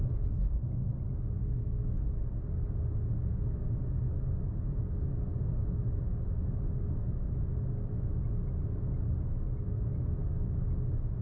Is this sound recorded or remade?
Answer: recorded